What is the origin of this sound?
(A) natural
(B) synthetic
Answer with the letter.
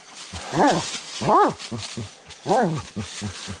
A